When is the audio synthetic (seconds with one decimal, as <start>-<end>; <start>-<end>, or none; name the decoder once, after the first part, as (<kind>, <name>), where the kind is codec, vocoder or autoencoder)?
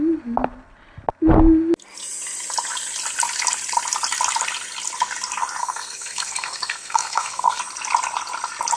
5.6-7.6 (codec, SNAC)